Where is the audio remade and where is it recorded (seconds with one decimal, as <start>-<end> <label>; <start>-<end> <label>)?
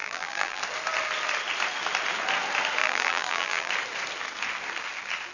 0.0-0.6 remade; 0.6-2.8 recorded; 2.8-3.7 remade; 3.7-5.3 recorded